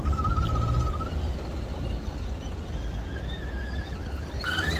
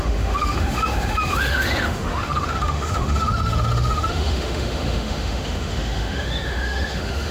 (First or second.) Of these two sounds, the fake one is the second